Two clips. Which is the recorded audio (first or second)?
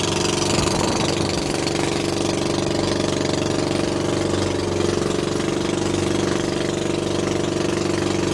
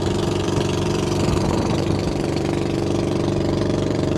first